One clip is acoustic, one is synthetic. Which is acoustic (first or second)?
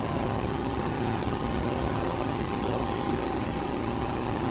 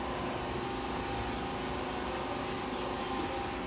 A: second